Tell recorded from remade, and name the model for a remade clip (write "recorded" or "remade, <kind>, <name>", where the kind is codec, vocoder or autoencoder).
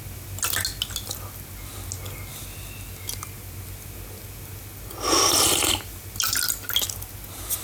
recorded